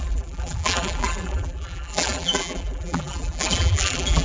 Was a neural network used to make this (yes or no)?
yes